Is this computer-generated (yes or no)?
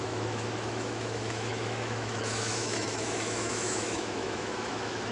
yes